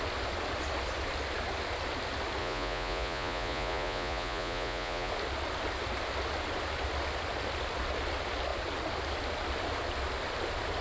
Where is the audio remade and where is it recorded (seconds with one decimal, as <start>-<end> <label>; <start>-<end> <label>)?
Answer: 0.0-2.4 recorded; 2.4-5.1 remade; 5.1-10.8 recorded